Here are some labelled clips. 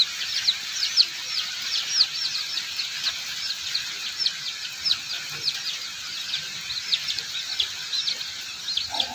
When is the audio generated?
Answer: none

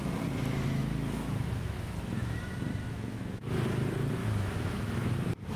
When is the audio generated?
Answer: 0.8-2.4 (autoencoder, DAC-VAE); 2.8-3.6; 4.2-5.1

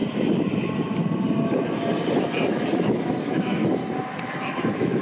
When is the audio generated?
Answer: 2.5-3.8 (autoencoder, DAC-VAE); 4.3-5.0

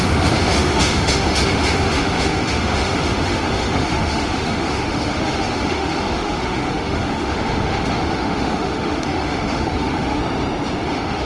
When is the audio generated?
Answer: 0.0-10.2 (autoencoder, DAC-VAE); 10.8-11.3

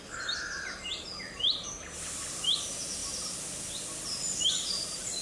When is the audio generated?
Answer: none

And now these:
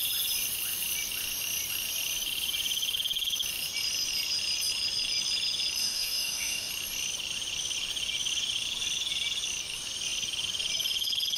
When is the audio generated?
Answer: 5.8-6.7 (autoencoder, DAC-VAE)

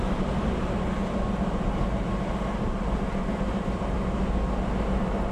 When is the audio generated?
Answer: none

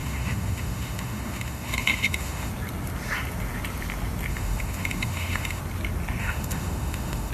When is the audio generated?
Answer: 0.0-2.5 (autoencoder, DAC-VAE); 4.3-5.6; 6.2-7.3